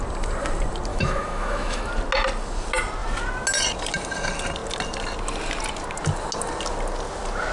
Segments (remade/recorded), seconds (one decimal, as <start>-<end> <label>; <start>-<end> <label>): 0.0-0.9 recorded; 0.9-1.9 remade; 1.9-7.5 recorded